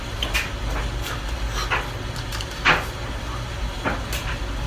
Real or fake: real